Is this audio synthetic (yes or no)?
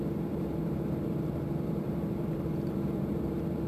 yes